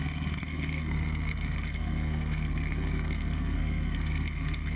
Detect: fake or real fake